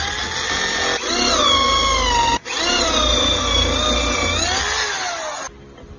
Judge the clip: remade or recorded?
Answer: recorded